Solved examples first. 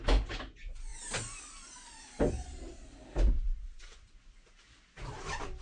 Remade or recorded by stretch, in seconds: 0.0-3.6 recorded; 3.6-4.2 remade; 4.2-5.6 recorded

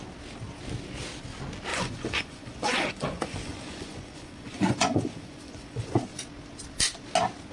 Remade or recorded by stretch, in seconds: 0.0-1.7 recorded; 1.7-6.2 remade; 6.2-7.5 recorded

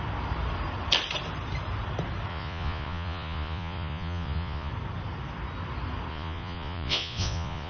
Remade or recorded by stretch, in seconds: 0.0-2.3 recorded; 2.3-4.7 remade; 4.7-6.1 recorded; 6.1-7.7 remade